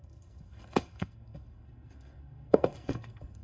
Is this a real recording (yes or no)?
no